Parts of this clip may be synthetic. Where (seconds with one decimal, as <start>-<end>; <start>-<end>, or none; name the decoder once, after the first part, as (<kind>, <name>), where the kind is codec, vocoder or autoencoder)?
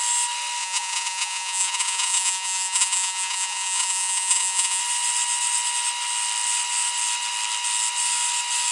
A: 0.6-4.8 (vocoder, Vocos)